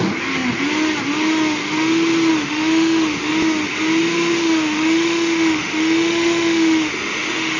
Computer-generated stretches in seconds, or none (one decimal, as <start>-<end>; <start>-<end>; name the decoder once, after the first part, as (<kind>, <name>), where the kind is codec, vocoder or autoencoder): 2.3-3.3 (autoencoder, DAC-VAE); 4.4-7.6